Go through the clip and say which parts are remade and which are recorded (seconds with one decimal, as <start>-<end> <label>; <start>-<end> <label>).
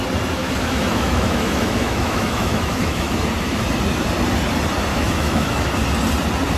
0.0-0.4 recorded; 0.4-3.2 remade; 3.2-4.9 recorded; 4.9-5.7 remade; 5.7-6.6 recorded